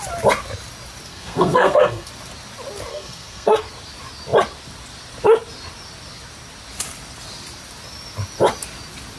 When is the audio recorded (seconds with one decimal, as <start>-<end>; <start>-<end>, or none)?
0.0-1.1; 2.1-2.9; 3.7-9.2